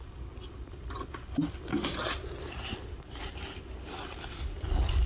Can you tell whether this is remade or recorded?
recorded